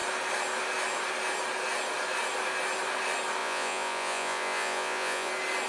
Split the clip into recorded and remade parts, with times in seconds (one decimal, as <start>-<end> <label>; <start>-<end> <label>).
0.0-3.4 recorded; 3.4-5.3 remade; 5.3-5.7 recorded